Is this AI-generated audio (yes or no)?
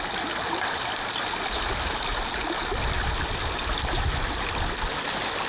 no